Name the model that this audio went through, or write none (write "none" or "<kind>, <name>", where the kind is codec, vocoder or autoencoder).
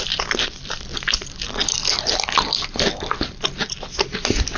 none